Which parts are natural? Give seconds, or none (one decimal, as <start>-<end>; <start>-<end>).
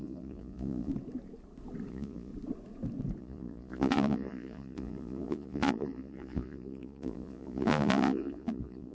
0.9-1.9; 2.3-3.2